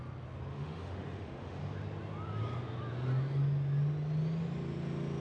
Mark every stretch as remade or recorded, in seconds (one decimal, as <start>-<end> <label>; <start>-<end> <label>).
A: 0.0-0.5 recorded; 0.5-1.6 remade; 1.6-5.2 recorded